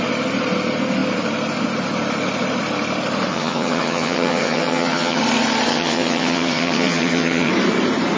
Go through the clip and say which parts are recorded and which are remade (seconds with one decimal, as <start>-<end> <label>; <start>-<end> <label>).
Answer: 0.0-3.3 recorded; 3.3-5.2 remade; 5.2-5.7 recorded; 5.7-7.5 remade; 7.5-8.2 recorded